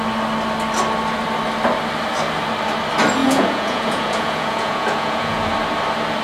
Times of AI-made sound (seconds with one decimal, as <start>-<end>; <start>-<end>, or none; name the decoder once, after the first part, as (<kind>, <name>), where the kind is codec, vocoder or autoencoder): 3.2-5.5 (vocoder, Vocos)